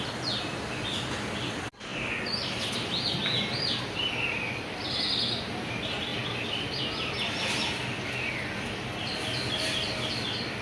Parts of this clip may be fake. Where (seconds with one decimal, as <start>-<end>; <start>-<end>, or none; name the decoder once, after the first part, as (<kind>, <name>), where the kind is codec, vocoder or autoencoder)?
6.1-6.8 (vocoder, BigVGAN v2)